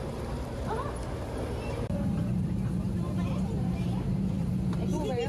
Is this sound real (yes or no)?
no